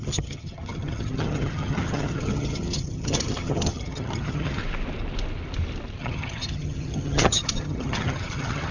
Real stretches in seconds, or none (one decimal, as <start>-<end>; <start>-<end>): 4.6-6.0